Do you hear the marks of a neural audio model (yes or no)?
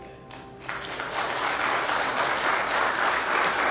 no